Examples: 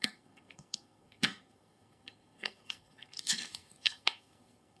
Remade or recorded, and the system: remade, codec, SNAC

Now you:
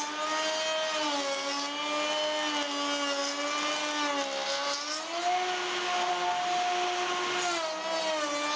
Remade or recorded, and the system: recorded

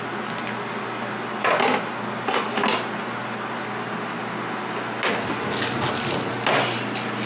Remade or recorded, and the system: recorded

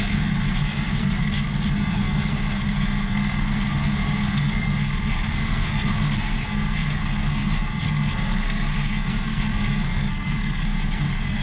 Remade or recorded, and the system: remade, codec, SNAC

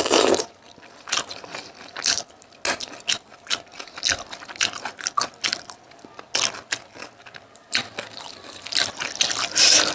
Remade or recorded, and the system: recorded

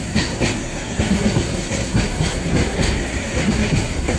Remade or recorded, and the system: remade, codec, SNAC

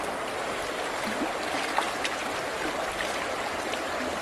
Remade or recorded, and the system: recorded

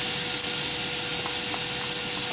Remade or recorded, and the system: recorded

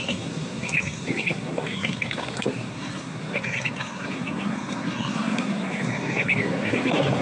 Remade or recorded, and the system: remade, codec, SNAC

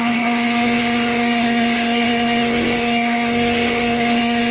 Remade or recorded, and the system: remade, codec, SNAC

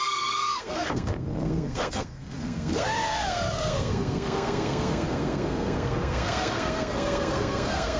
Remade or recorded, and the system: remade, codec, SNAC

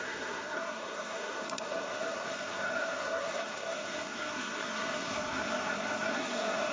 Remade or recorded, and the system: remade, codec, SNAC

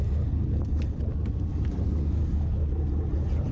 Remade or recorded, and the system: recorded